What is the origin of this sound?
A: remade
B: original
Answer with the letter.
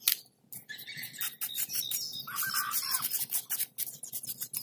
B